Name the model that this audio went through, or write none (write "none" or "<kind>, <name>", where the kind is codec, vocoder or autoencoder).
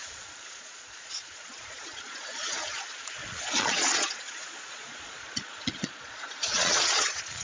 vocoder, Vocos